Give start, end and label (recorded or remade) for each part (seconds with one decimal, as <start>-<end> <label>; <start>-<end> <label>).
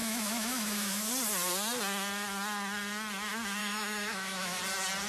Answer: 0.0-1.1 remade; 1.1-3.6 recorded; 3.6-4.6 remade; 4.6-5.1 recorded